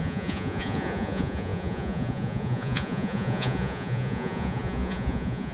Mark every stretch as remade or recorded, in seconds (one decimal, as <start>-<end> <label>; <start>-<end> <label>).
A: 0.0-5.5 remade